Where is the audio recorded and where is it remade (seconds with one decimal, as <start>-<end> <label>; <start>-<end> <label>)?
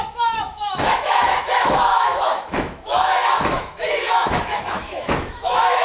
0.0-5.8 remade